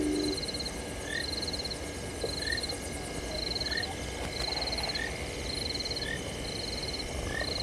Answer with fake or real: real